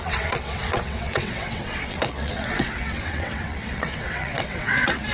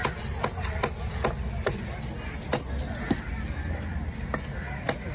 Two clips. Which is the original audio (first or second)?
second